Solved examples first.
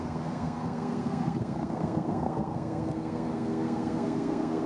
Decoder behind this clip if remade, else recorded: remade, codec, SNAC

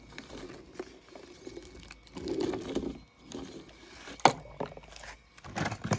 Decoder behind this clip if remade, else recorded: recorded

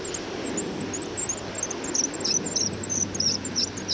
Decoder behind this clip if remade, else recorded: recorded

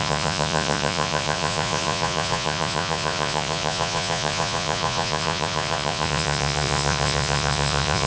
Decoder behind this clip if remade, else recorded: remade, vocoder, Vocos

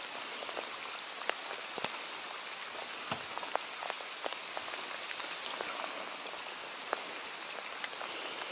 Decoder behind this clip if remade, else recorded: recorded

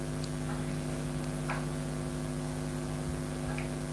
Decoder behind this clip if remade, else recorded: recorded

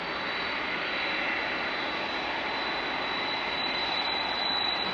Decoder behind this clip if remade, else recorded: recorded